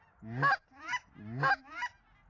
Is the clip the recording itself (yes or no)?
yes